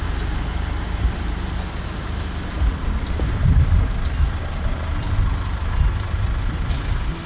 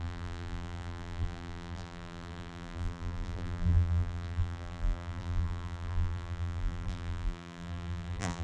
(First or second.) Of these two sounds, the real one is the first